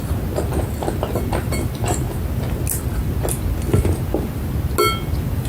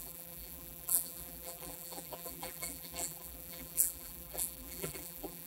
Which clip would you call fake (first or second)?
second